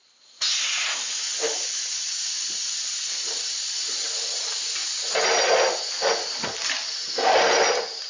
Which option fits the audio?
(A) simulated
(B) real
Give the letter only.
B